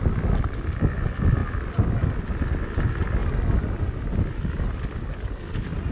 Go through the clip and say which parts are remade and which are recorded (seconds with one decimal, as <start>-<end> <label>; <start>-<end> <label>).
0.0-5.9 recorded